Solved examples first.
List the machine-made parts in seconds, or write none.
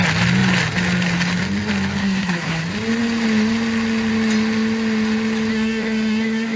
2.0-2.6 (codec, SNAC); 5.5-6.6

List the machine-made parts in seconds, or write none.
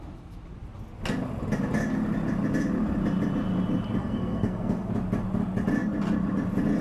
4.0-4.9 (codec, SNAC)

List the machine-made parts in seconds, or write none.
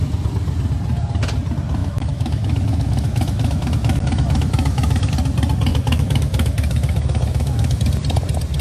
1.8-5.1 (autoencoder, DAC-VAE); 5.7-7.8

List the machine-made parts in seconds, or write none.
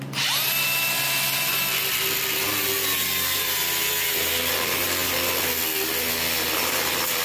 none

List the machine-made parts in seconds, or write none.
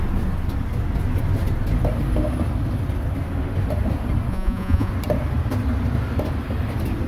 4.3-4.9 (vocoder, Vocos)